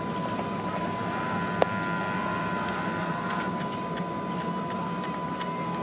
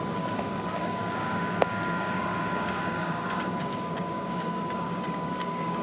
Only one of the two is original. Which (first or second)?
first